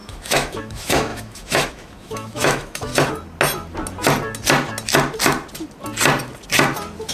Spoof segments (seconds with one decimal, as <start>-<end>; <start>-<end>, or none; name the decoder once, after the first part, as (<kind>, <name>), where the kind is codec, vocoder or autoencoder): 0.0-2.9 (autoencoder, DAC-VAE)